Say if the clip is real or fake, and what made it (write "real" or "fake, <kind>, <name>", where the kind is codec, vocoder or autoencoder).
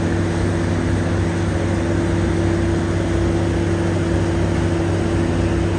real